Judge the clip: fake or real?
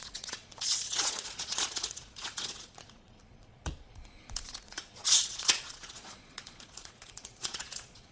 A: fake